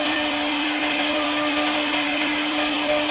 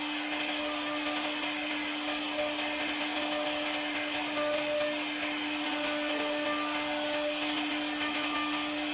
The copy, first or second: first